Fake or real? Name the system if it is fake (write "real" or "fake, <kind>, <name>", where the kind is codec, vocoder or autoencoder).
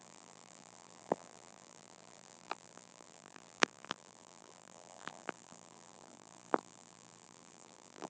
fake, vocoder, BigVGAN v2